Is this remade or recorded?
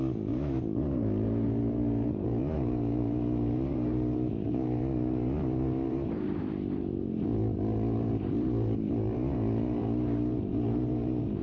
remade